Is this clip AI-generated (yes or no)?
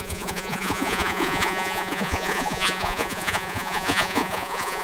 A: yes